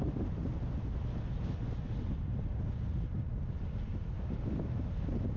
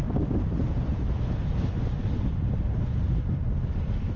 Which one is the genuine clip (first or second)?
first